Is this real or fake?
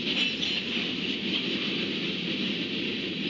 real